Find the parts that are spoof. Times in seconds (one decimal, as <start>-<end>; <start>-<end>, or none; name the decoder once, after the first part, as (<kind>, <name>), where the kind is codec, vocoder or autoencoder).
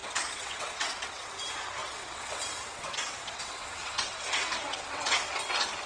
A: 0.0-1.3 (vocoder, WaveNeXt); 1.8-5.3